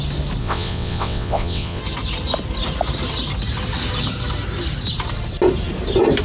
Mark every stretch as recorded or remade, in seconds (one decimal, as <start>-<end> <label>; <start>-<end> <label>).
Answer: 0.0-0.4 recorded; 0.4-1.8 remade; 1.8-6.2 recorded